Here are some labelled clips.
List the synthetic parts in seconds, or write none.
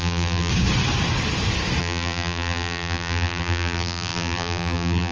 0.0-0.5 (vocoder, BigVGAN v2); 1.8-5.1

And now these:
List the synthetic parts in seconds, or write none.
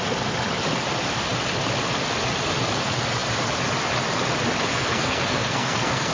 4.7-6.1 (codec, SNAC)